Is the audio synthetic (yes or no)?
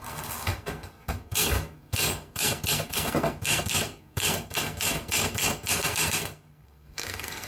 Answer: yes